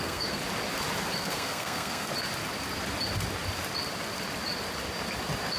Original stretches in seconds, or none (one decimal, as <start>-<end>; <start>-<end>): 0.4-1.2; 2.1-5.6